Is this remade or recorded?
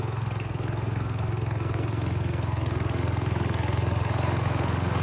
remade